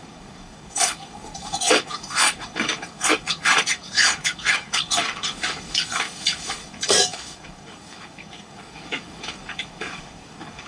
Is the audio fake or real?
fake